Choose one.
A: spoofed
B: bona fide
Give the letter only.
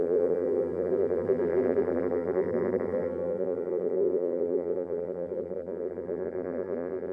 A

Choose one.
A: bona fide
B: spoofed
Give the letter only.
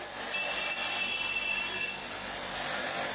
B